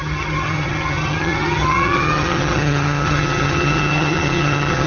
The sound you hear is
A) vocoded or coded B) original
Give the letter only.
A